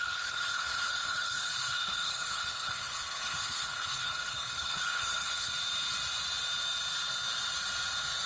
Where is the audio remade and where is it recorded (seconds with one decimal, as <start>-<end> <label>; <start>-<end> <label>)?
0.0-5.5 remade; 5.5-8.3 recorded